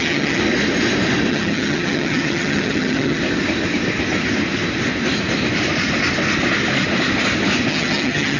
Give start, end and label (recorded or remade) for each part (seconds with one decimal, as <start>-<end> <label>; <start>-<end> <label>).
0.0-0.4 remade; 0.4-1.3 recorded; 1.3-3.2 remade; 3.2-7.7 recorded; 7.7-8.4 remade